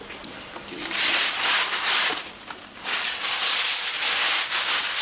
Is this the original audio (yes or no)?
yes